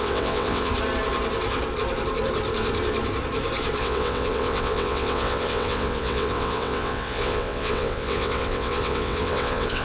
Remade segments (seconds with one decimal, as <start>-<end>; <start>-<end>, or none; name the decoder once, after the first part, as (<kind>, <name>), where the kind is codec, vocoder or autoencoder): 0.0-0.7 (vocoder, WaveNeXt); 3.8-9.8